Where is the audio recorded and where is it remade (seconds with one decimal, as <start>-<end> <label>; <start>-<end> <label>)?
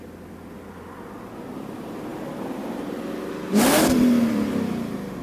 0.0-2.1 recorded; 2.1-5.2 remade